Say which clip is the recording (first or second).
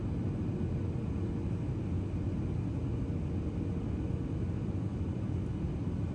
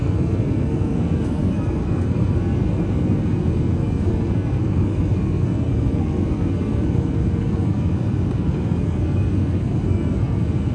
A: first